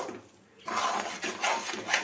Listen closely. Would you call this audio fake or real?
real